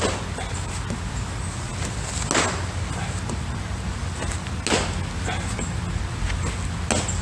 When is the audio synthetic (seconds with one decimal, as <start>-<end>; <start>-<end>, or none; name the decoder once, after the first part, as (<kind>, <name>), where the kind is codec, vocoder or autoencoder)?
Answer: none